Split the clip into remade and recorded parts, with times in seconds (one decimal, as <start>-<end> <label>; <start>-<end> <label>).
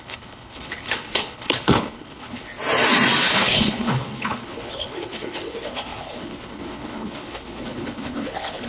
0.0-2.5 remade; 2.5-3.3 recorded; 3.3-8.7 remade